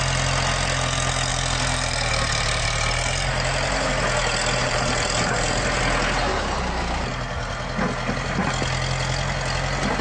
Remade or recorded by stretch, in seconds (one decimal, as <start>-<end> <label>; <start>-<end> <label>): 0.0-1.3 recorded; 1.3-3.9 remade; 3.9-4.6 recorded; 4.6-5.8 remade; 5.8-10.0 recorded